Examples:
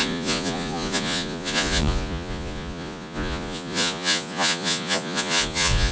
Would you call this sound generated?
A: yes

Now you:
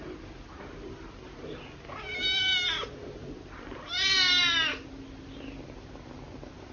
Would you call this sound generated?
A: no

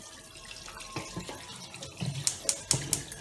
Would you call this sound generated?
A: no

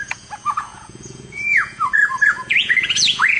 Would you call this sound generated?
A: yes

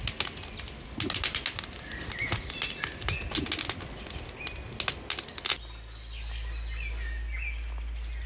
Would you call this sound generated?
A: no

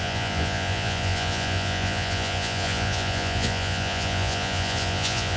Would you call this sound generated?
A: yes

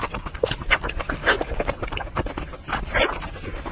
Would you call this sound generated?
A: no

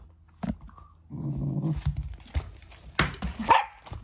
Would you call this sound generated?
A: no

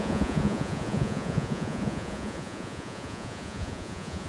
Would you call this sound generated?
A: yes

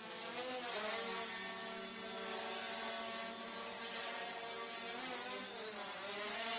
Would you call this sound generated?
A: no